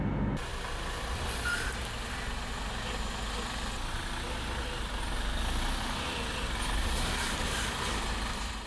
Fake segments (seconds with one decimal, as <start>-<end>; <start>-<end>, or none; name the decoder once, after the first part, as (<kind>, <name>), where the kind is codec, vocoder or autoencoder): none